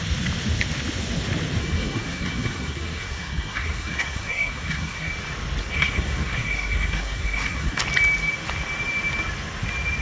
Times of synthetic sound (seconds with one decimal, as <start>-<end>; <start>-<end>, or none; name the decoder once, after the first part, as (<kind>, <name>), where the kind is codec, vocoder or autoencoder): 1.6-5.1 (codec, SNAC); 5.6-7.8